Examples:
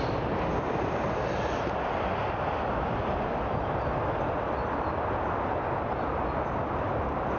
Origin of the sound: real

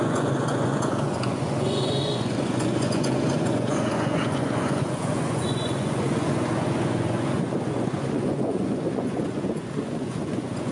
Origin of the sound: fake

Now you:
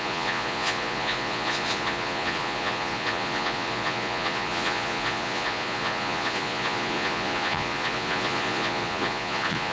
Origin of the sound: fake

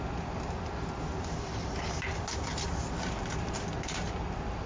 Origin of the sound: real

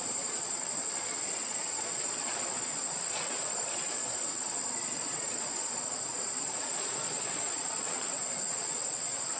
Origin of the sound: fake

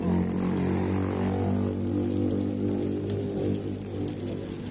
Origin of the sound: real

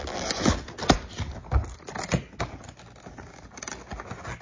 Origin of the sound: real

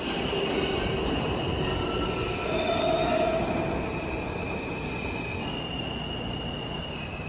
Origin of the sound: real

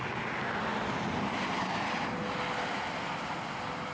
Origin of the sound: real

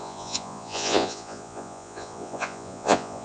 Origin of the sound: fake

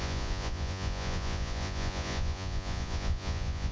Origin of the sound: fake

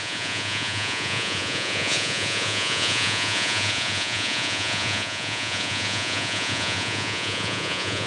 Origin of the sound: fake